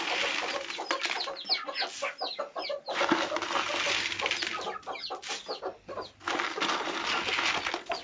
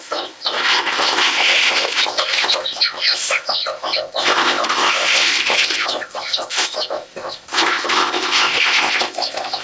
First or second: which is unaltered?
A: first